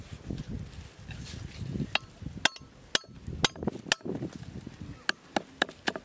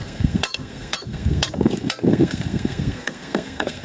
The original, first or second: first